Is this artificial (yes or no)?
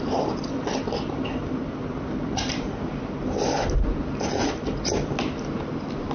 no